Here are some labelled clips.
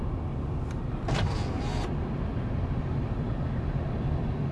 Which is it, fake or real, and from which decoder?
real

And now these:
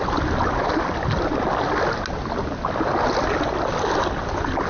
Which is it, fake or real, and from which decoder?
real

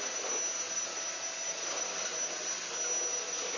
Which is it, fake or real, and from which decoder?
real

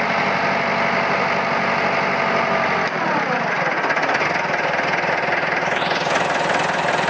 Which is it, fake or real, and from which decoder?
real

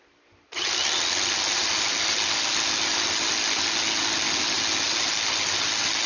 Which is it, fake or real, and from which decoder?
real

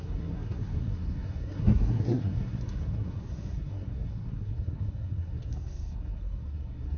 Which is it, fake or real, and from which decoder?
fake, codec, SNAC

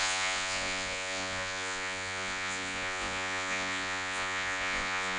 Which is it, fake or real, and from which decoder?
fake, vocoder, Vocos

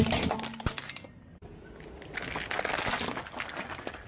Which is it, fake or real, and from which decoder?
real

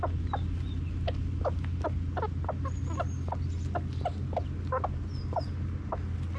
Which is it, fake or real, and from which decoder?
real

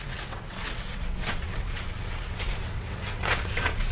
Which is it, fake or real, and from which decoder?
fake, vocoder, WaveNeXt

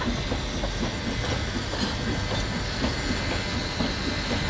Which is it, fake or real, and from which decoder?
real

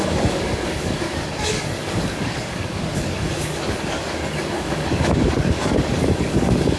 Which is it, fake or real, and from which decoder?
fake, codec, DAC